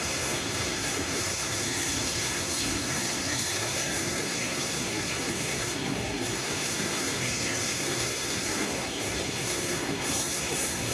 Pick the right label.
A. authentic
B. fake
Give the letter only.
B